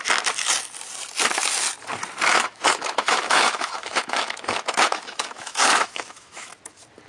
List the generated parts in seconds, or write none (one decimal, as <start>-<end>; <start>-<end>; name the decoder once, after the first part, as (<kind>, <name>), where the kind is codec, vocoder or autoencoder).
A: 2.3-6.5 (autoencoder, DAC-VAE)